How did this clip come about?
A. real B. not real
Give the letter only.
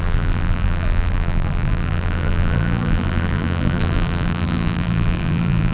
B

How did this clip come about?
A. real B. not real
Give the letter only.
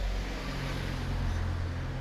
A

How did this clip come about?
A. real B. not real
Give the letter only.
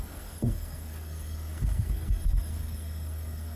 B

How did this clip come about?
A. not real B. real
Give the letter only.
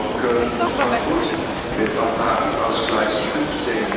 A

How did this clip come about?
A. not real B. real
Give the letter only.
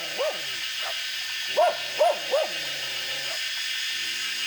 B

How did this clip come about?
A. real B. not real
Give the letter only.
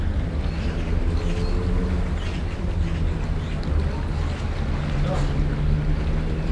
A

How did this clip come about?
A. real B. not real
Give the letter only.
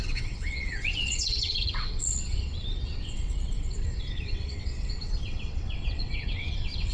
B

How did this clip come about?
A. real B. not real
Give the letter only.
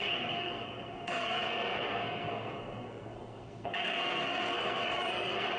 B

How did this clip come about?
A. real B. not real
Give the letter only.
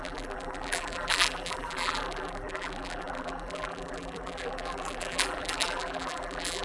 B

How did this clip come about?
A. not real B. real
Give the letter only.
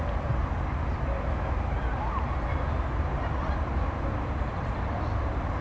B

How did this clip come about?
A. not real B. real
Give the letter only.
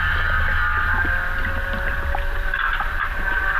B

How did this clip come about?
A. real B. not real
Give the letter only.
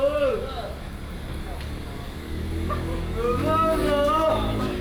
B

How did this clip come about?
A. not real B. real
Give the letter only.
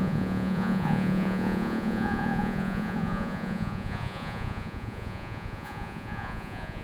A